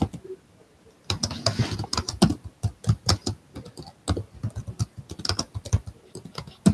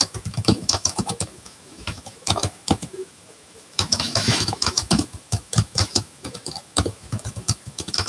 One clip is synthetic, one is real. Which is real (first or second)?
first